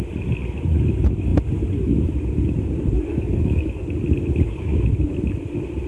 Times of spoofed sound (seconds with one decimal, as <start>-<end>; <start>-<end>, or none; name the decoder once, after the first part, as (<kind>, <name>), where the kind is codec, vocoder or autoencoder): 3.1-3.8 (codec, DAC)